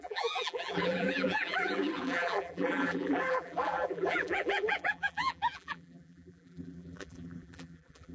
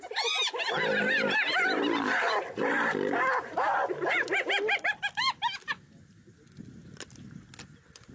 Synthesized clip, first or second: first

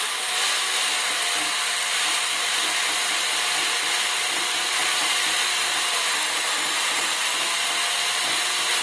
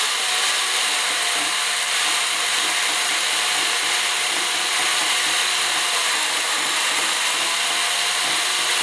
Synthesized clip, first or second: second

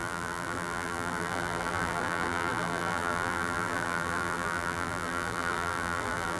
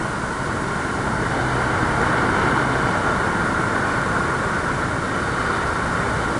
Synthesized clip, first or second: first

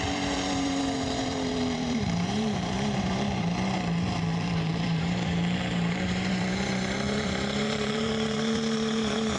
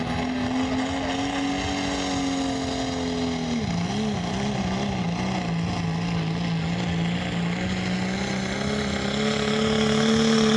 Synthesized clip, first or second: first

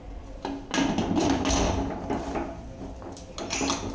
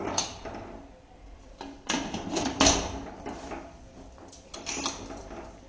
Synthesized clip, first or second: second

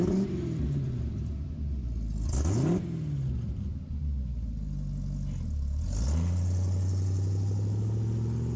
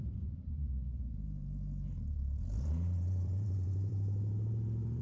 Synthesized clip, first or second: second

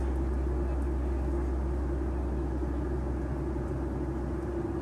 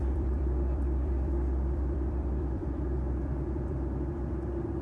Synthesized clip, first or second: second